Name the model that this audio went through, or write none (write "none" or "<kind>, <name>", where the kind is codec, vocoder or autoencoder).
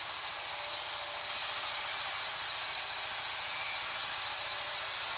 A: none